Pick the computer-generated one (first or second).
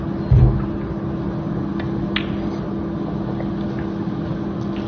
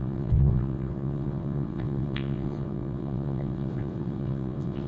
second